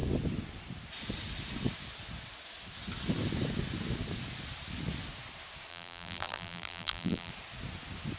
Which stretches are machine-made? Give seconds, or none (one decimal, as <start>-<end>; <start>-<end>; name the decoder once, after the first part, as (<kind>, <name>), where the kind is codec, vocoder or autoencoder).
5.7-7.3 (vocoder, BigVGAN v2)